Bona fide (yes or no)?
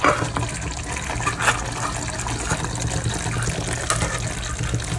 yes